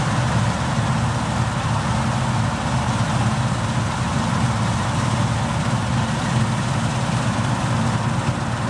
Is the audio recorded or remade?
recorded